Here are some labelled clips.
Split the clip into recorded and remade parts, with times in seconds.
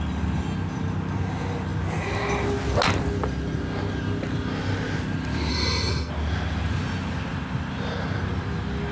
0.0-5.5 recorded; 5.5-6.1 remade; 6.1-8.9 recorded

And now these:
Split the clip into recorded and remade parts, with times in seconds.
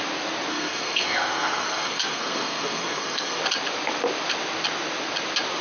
0.0-0.5 recorded; 0.5-3.4 remade; 3.4-5.6 recorded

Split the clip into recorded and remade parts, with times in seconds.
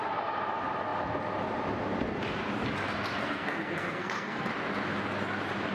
0.0-3.2 recorded; 3.2-4.5 remade; 4.5-5.7 recorded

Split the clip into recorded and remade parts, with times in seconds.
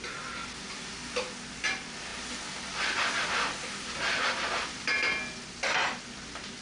0.0-6.6 recorded